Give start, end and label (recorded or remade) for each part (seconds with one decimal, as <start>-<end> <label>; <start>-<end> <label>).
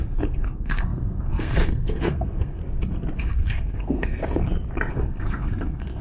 0.0-2.6 remade; 2.6-3.2 recorded; 3.2-4.2 remade; 4.2-4.9 recorded; 4.9-6.0 remade